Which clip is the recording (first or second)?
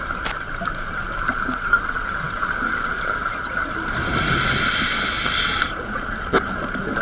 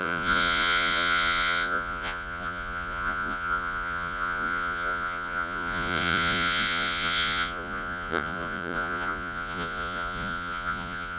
first